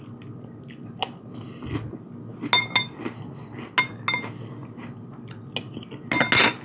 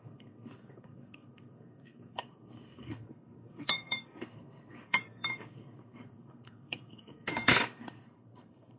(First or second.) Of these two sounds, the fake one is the second